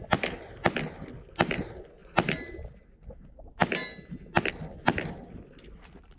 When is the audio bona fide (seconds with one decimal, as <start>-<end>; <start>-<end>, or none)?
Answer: 0.0-6.2